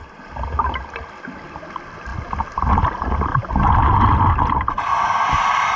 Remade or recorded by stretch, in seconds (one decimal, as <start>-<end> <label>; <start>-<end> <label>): 0.0-5.8 recorded